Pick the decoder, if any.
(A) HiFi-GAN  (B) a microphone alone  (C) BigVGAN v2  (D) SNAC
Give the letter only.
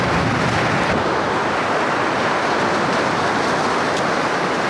B